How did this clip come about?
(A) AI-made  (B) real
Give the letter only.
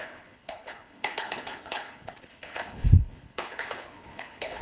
A